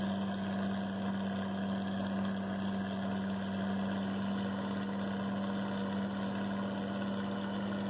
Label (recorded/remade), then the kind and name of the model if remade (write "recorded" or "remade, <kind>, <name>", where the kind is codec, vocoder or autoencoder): recorded